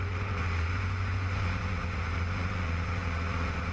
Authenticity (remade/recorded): remade